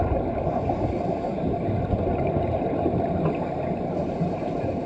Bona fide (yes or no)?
yes